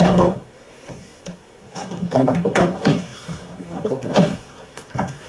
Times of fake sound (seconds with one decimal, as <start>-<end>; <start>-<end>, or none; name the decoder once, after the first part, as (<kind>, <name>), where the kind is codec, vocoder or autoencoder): 0.0-5.3 (codec, SNAC)